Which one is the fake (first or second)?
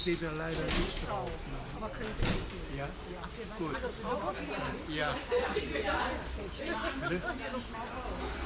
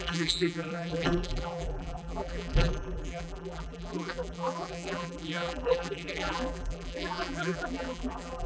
second